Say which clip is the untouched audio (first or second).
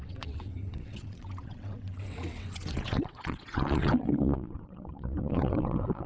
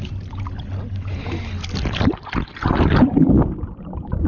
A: second